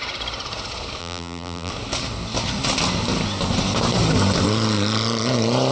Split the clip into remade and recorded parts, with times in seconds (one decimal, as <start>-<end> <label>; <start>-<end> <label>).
0.0-1.0 recorded; 1.0-1.7 remade; 1.7-5.7 recorded